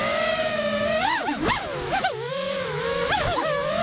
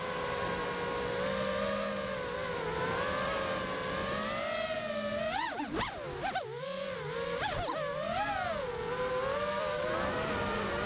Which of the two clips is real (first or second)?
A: second